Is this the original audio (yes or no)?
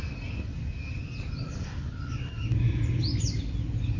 yes